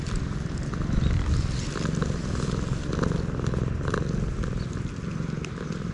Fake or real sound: real